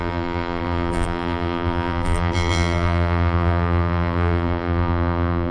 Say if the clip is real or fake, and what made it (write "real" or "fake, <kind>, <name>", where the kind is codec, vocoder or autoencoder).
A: fake, vocoder, BigVGAN v2